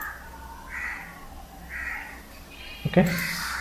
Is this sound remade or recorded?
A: recorded